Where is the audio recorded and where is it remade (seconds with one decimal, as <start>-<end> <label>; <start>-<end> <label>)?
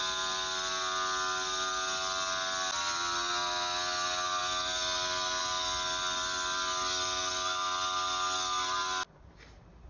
0.0-9.9 recorded